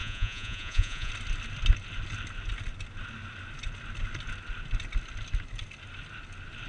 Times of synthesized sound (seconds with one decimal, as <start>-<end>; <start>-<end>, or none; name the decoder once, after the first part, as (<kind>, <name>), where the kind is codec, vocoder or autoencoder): 0.0-1.1 (vocoder, Vocos)